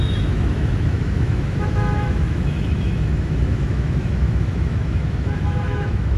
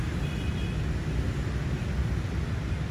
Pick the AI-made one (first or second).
first